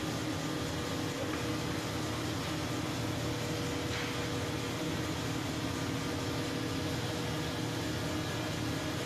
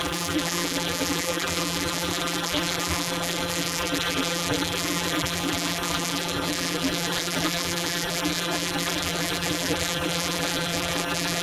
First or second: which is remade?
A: second